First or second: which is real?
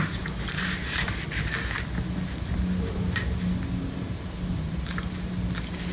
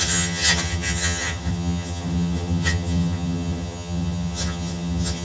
first